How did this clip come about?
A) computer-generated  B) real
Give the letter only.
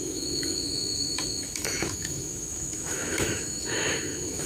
A